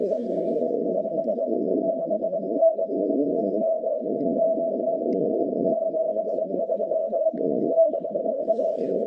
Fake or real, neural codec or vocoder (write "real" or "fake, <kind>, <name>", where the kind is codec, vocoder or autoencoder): fake, codec, SNAC